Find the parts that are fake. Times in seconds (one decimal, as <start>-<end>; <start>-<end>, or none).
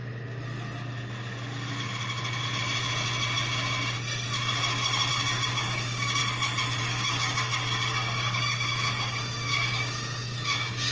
5.1-6.2; 6.8-10.9